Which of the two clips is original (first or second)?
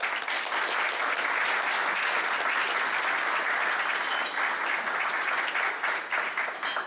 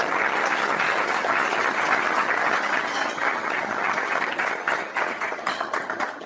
first